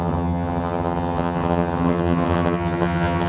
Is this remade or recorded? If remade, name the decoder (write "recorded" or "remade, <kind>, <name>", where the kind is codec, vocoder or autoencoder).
remade, vocoder, HiFi-GAN